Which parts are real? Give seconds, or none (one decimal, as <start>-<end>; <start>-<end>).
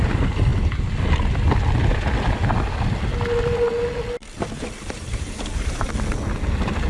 0.0-4.2; 5.9-6.9